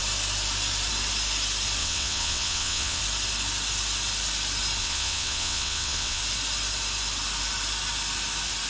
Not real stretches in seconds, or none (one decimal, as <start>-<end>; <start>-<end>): 1.8-3.0; 4.8-6.2